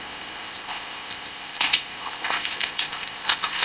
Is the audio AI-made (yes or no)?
yes